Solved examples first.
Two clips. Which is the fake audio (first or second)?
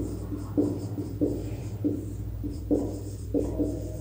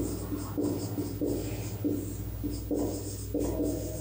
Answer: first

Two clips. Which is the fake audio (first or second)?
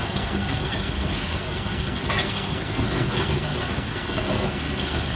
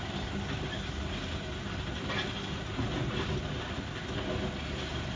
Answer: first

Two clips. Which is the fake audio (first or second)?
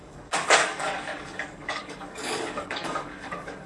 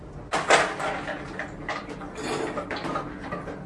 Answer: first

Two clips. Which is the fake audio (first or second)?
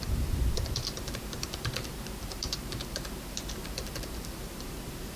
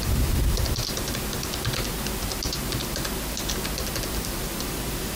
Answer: first